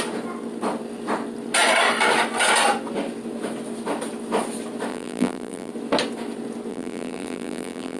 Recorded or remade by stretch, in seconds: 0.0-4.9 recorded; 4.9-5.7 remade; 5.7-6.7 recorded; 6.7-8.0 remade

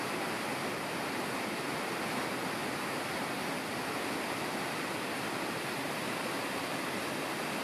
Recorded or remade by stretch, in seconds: 0.0-7.6 recorded